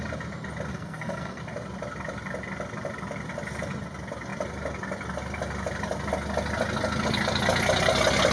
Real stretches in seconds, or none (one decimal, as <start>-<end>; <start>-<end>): 0.0-0.7; 1.4-8.3